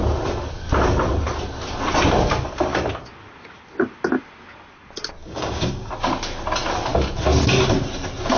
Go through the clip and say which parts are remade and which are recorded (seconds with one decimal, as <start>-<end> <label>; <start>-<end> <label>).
0.0-5.2 recorded; 5.2-5.9 remade; 5.9-8.4 recorded